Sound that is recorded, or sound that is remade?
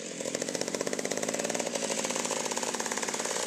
remade